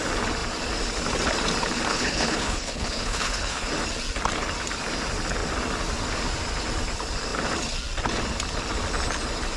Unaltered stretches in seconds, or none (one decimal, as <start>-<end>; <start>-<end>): 0.0-1.9; 3.7-9.6

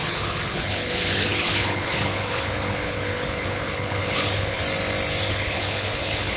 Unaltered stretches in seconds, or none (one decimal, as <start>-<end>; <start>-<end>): 4.6-5.3

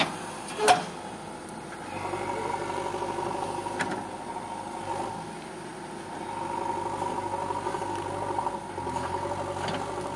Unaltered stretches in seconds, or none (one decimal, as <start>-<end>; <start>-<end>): 0.0-10.2

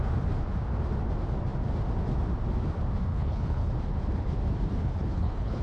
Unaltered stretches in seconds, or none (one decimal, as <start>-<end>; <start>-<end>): 0.0-3.1; 3.7-4.7

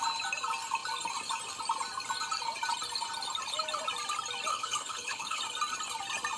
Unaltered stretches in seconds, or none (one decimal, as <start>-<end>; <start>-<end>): 0.0-4.5; 5.4-6.4